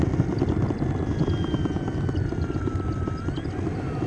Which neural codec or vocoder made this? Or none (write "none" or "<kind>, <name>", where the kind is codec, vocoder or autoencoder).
none